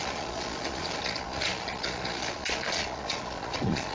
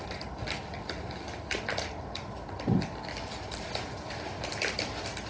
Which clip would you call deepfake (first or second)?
first